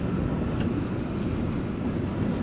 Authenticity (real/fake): real